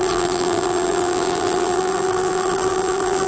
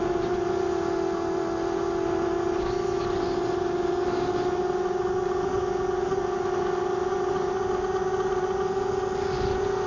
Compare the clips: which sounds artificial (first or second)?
first